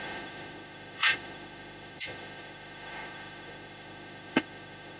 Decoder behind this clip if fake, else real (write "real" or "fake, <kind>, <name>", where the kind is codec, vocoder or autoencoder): fake, autoencoder, DAC-VAE